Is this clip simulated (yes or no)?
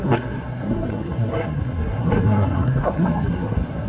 yes